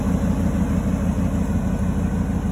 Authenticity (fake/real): real